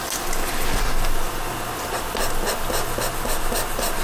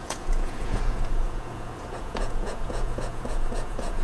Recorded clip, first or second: first